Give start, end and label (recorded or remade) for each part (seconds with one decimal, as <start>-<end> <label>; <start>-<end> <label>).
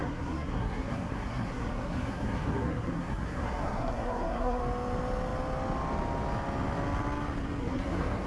0.0-4.6 remade; 4.6-7.6 recorded; 7.6-8.3 remade